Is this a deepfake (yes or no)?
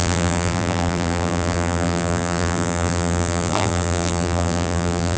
yes